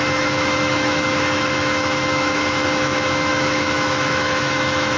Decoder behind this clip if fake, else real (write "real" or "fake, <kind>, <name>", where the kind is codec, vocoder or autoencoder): fake, autoencoder, DAC-VAE